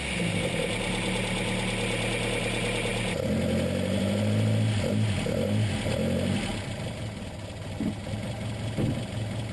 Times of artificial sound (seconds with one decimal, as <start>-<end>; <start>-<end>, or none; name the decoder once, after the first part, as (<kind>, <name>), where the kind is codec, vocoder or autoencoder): none